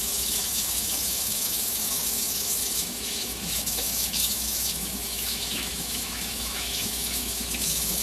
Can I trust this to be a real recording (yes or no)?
no